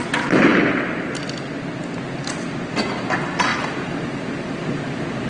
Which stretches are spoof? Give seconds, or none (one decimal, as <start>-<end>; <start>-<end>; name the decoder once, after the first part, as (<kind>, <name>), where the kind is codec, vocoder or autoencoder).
0.5-1.2 (vocoder, BigVGAN v2); 3.5-4.6